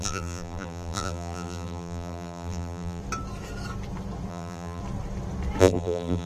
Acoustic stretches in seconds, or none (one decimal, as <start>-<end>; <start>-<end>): 3.0-4.3; 4.8-5.6